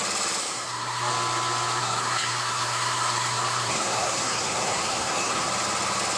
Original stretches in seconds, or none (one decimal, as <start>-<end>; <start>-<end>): 0.0-0.4; 1.1-1.8; 5.5-6.2